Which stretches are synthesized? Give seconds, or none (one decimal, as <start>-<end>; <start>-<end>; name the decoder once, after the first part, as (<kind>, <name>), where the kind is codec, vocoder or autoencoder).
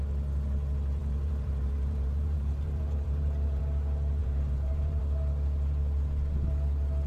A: 1.0-3.6 (vocoder, BigVGAN v2); 4.2-5.0